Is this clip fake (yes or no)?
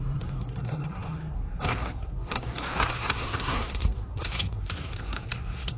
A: yes